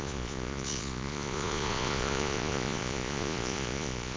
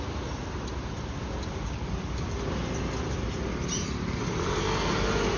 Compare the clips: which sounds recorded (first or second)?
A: second